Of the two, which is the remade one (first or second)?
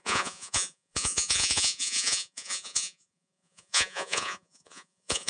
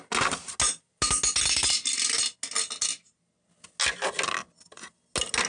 first